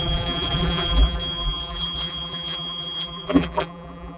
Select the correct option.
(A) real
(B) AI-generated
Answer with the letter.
B